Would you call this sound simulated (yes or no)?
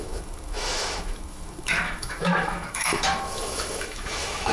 yes